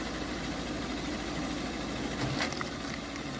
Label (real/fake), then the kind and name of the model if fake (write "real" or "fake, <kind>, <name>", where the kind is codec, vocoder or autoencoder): real